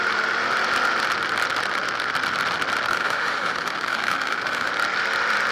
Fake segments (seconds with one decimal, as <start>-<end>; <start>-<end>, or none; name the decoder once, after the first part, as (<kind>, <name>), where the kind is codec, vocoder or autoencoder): 2.9-4.7 (autoencoder, DAC-VAE)